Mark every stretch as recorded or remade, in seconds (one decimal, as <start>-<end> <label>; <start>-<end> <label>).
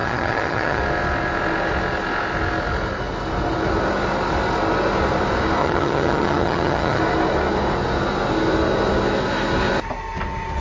0.0-0.8 remade; 0.8-5.6 recorded; 5.6-7.0 remade; 7.0-10.6 recorded